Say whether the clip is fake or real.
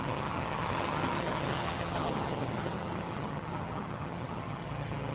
fake